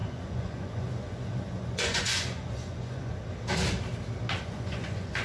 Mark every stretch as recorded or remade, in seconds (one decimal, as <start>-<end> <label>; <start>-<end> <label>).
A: 0.0-3.1 remade; 3.1-4.4 recorded; 4.4-5.2 remade